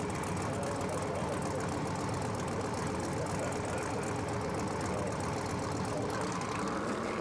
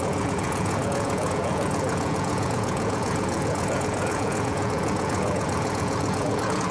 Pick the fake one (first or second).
second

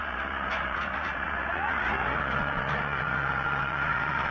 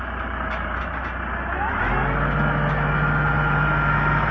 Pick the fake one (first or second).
first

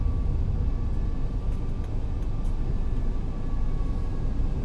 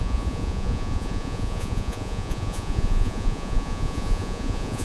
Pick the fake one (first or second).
second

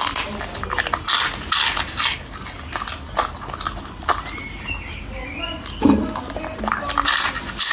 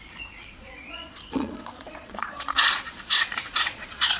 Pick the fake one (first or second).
second